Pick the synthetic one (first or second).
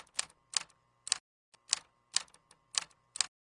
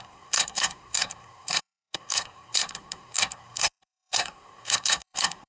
second